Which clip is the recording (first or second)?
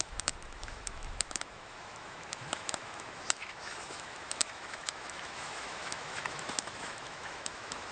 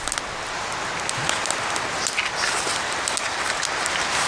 second